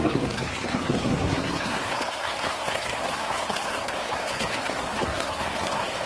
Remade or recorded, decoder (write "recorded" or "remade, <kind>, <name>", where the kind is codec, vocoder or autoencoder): remade, codec, SNAC